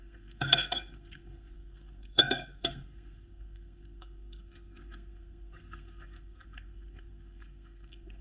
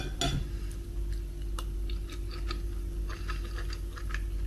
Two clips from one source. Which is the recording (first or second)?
second